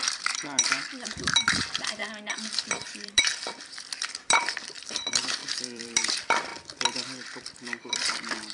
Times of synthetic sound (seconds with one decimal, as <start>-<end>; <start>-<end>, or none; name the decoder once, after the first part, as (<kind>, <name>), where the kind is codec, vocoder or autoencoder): 0.0-2.0 (vocoder, BigVGAN v2); 2.6-3.3; 4.0-6.5